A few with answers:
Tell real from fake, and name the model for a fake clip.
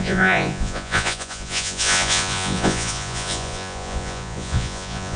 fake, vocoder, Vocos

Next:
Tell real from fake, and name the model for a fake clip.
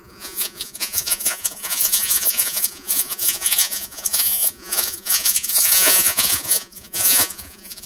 fake, vocoder, Vocos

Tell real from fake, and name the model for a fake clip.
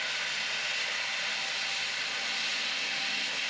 real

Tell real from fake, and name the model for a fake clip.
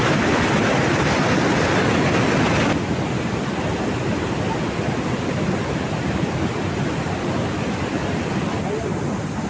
real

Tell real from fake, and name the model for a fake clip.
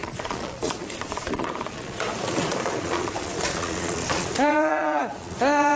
fake, vocoder, Vocos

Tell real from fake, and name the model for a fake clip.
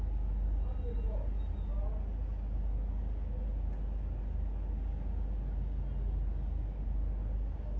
real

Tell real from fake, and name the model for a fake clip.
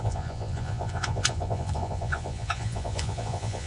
fake, vocoder, Vocos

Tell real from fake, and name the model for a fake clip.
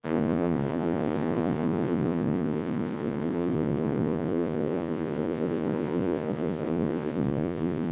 fake, vocoder, Vocos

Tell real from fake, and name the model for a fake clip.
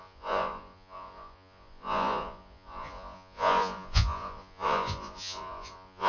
fake, vocoder, Vocos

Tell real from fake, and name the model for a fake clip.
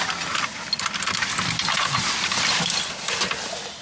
real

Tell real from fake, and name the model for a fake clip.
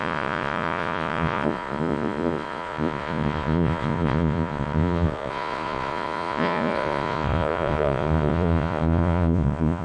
fake, vocoder, Vocos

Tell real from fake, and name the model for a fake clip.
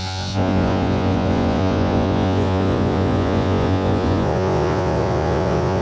fake, vocoder, Vocos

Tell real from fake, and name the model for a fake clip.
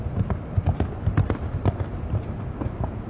real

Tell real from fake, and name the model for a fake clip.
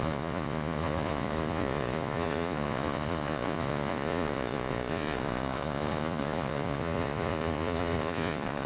fake, vocoder, Vocos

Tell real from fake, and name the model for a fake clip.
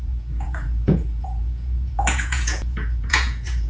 fake, vocoder, Vocos